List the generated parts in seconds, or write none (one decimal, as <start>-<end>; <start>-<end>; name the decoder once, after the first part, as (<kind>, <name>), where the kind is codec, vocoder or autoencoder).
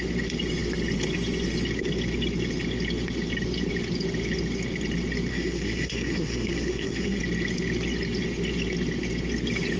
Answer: 5.3-7.2 (codec, SNAC)